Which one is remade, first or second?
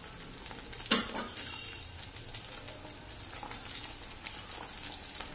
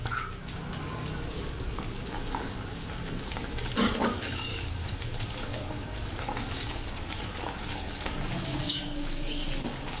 second